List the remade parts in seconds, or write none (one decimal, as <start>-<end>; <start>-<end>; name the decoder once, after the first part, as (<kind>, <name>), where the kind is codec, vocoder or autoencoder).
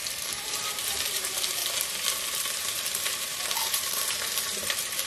0.0-1.6 (vocoder, BigVGAN v2); 2.6-5.1